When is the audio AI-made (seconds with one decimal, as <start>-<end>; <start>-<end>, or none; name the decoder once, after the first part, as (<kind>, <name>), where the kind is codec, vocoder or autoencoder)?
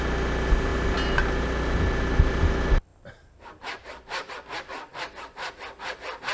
2.9-4.3 (vocoder, BigVGAN v2)